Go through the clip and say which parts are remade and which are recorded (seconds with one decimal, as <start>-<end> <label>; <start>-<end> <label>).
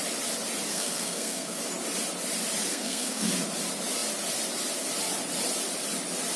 0.0-0.7 recorded; 0.7-1.6 remade; 1.6-2.7 recorded; 2.7-3.3 remade; 3.3-6.4 recorded